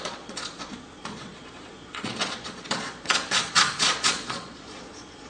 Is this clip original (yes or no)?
no